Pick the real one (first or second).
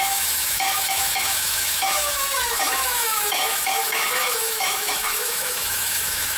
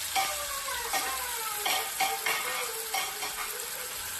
second